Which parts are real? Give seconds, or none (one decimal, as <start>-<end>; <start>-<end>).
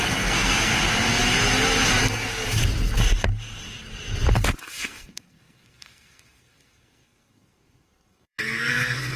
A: 0.7-2.0; 2.6-4.6